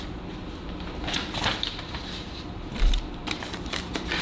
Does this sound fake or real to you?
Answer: fake